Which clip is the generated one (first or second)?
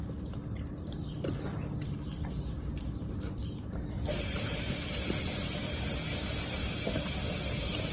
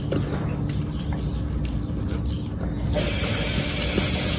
first